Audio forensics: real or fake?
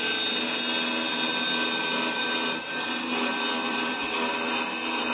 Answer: real